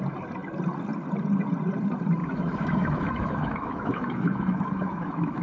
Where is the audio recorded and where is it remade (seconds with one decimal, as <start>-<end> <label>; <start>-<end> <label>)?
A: 0.0-2.2 recorded; 2.2-5.4 remade